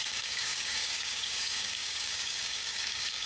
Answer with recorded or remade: remade